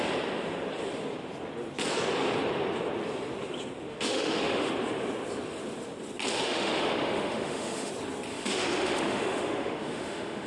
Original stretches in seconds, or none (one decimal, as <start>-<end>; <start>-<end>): 0.0-3.9; 4.7-6.3; 7.9-8.3

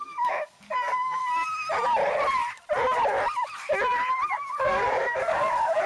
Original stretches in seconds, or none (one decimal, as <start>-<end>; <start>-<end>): 1.2-4.3